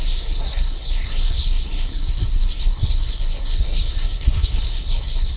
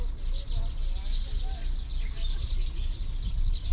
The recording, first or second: second